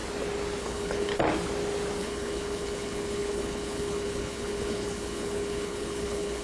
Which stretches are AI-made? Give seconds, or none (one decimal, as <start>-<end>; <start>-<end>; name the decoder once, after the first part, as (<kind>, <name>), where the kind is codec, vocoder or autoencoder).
0.6-1.1 (codec, HILCodec); 2.0-6.4